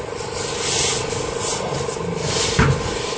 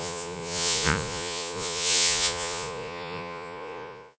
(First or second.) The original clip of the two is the first